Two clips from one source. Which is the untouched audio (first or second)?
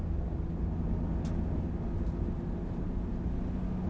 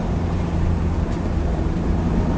first